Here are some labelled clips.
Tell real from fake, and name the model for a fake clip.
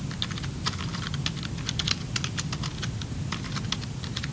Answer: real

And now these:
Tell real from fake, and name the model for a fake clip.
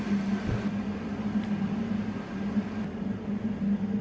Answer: real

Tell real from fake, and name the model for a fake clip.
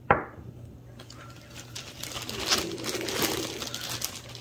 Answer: real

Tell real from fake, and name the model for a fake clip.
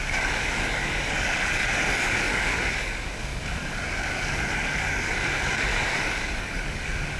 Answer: fake, codec, DAC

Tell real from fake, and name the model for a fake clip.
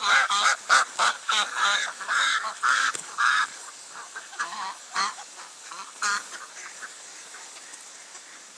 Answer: fake, codec, DAC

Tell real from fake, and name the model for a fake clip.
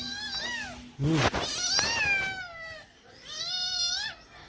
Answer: real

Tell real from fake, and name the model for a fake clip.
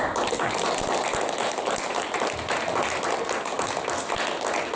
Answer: real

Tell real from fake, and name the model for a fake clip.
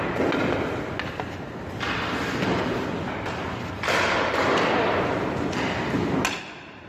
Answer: real